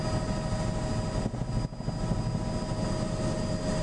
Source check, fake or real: real